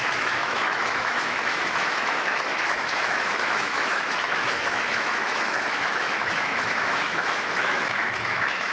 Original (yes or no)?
no